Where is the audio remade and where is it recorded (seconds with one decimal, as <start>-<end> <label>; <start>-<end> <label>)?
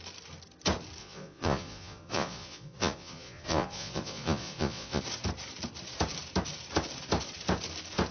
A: 0.0-1.0 recorded; 1.0-5.0 remade; 5.0-8.1 recorded